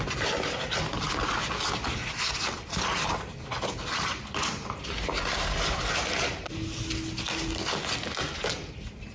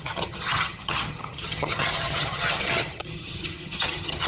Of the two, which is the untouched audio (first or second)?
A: first